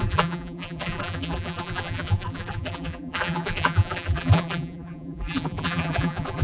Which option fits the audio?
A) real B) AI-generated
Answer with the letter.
B